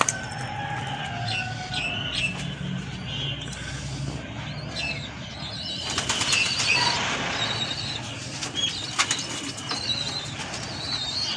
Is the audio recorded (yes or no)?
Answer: yes